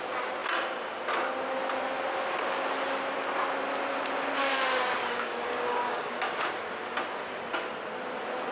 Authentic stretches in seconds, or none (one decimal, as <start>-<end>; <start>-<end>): 0.0-5.0; 6.2-8.5